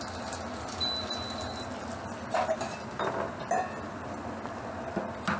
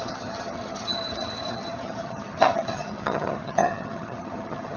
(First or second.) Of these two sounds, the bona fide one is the first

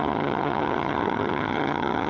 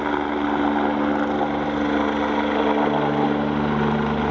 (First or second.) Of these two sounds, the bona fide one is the second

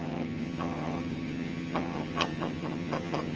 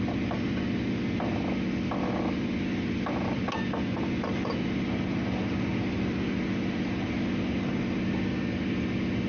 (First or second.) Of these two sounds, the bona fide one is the second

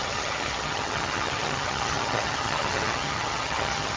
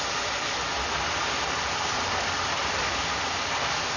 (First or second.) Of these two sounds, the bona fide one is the second